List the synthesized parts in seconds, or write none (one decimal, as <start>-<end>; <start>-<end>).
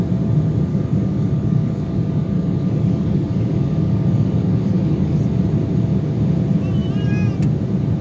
0.7-5.2